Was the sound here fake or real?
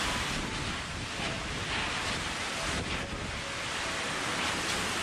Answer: real